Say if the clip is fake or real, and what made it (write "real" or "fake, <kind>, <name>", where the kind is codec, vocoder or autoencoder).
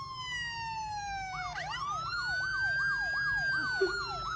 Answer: real